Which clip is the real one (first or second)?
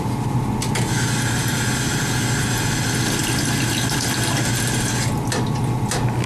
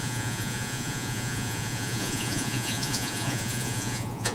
first